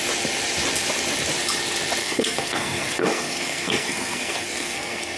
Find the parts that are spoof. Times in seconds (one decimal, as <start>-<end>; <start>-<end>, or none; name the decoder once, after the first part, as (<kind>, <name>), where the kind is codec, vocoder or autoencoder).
2.0-5.2 (codec, SNAC)